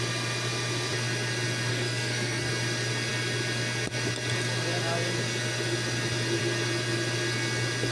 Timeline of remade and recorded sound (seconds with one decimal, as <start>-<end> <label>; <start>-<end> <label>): 0.0-1.7 recorded; 1.7-2.5 remade; 2.5-7.9 recorded